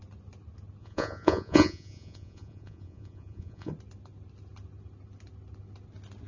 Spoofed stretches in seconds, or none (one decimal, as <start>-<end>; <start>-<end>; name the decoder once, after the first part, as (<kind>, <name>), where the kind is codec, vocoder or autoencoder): 0.8-3.7 (vocoder, Vocos)